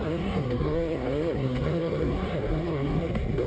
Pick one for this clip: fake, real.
fake